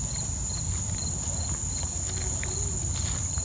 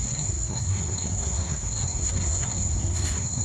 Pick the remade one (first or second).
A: second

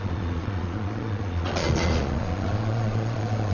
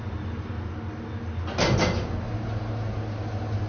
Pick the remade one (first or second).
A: first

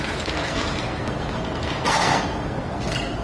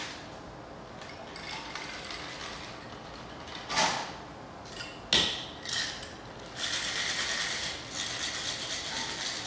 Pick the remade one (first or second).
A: first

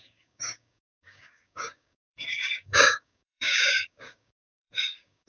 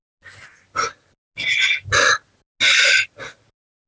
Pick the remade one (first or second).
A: first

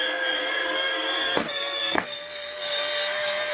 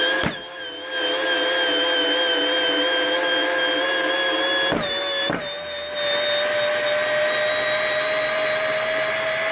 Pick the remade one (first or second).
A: first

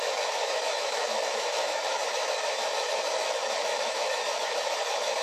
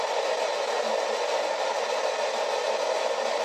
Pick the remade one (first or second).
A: first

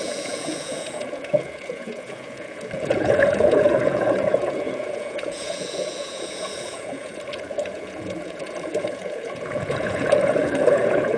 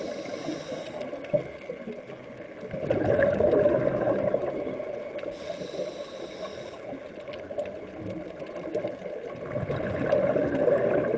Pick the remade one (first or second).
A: first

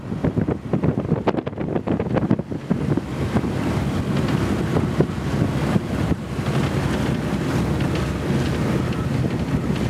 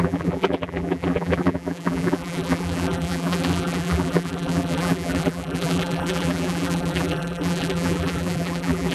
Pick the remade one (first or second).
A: second